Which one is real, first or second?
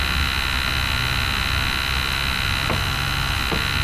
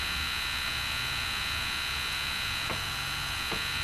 first